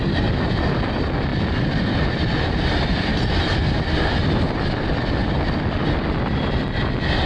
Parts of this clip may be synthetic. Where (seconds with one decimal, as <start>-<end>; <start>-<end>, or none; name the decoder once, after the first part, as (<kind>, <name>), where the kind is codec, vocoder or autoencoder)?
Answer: none